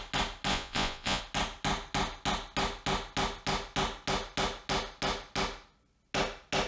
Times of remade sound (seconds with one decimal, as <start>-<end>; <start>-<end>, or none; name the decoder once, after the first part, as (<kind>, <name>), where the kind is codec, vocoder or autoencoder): 0.5-1.2 (vocoder, Vocos)

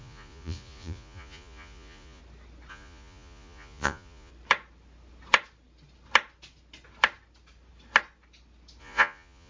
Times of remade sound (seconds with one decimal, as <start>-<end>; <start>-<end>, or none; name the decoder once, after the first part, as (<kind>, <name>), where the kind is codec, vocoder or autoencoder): 0.0-2.2 (vocoder, Vocos); 2.7-4.3; 8.8-9.5